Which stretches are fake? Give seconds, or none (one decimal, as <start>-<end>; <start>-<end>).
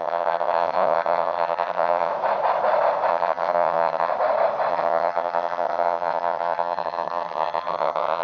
0.0-2.1; 3.1-4.1; 4.7-8.2